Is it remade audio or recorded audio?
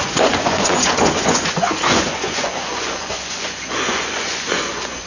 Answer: remade